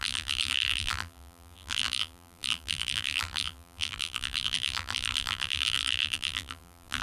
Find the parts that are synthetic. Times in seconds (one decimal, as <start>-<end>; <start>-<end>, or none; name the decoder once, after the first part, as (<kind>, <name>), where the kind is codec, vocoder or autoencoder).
0.0-7.0 (vocoder, BigVGAN v2)